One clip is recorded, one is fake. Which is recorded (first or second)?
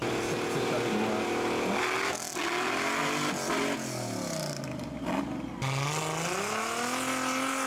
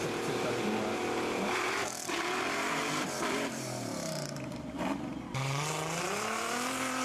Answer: first